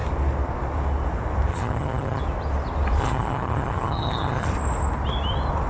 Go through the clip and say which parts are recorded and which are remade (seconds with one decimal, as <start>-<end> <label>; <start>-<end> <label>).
0.0-1.5 recorded; 1.5-2.2 remade; 2.2-3.0 recorded; 3.0-4.5 remade; 4.5-5.7 recorded